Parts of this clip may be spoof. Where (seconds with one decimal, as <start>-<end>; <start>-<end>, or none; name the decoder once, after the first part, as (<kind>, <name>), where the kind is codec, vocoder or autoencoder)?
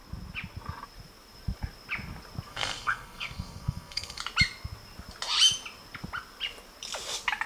2.5-4.2 (codec, SNAC)